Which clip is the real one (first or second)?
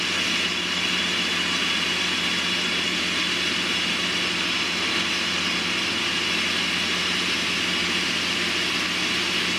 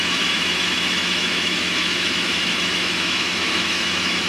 first